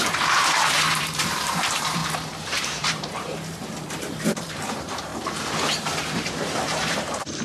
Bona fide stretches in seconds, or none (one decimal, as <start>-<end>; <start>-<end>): 2.0-2.5; 5.1-5.6